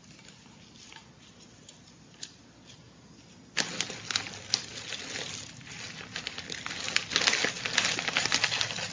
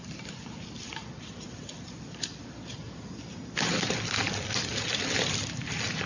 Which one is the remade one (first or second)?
second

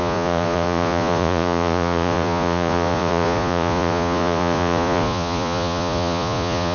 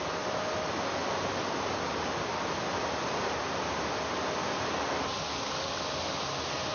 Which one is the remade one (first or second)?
first